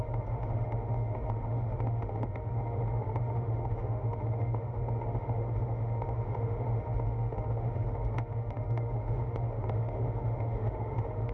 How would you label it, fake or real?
fake